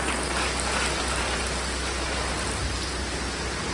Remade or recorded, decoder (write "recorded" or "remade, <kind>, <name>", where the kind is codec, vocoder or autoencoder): recorded